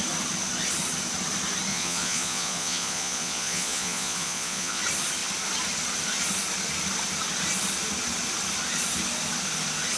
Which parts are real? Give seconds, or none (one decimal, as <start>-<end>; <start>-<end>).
0.0-1.7; 4.8-10.0